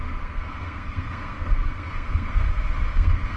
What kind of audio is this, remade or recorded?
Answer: remade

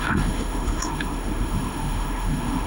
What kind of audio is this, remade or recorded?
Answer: remade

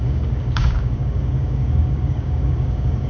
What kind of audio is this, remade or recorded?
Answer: remade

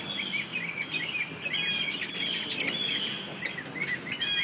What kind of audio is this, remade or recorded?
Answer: recorded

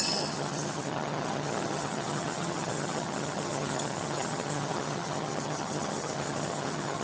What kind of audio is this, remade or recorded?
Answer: remade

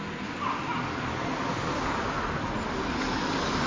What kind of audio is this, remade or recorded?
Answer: recorded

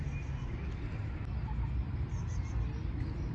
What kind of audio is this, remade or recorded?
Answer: recorded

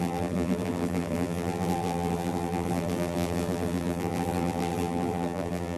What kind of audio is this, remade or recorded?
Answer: remade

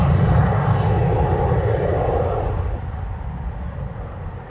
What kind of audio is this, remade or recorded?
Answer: recorded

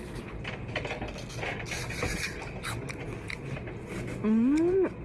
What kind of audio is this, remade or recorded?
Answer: recorded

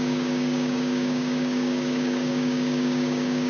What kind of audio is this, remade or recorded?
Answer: remade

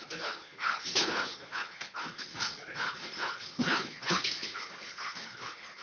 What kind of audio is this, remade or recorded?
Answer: remade